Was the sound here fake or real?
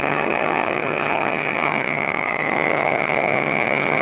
fake